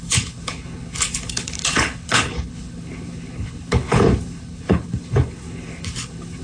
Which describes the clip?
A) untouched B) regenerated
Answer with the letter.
B